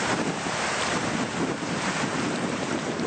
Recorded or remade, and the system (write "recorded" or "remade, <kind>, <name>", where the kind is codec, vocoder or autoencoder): remade, vocoder, BigVGAN v2